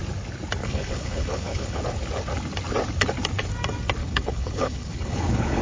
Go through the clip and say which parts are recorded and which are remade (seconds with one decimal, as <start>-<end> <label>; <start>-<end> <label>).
0.0-0.6 recorded; 0.6-1.8 remade; 1.8-4.0 recorded; 4.0-5.6 remade